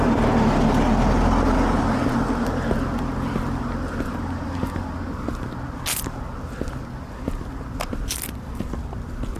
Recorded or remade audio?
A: recorded